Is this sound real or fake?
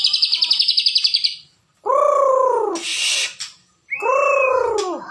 real